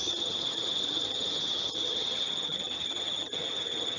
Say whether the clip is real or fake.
fake